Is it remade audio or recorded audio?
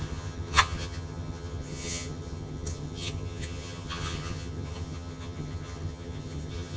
remade